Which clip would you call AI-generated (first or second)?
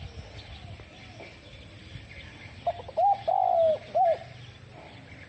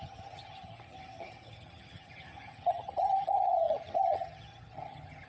second